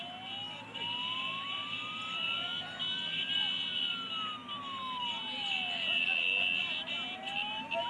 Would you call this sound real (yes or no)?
yes